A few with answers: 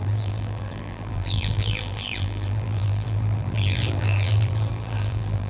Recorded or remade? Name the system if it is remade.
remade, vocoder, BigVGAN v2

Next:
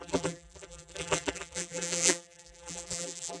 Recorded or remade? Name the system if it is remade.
remade, vocoder, BigVGAN v2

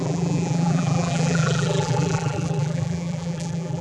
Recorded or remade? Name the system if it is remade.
remade, vocoder, BigVGAN v2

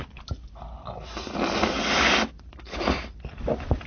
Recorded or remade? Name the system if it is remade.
remade, vocoder, BigVGAN v2